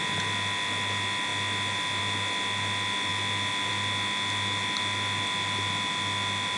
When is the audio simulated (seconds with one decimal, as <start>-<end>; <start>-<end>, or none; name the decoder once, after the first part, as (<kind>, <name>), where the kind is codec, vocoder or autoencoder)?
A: none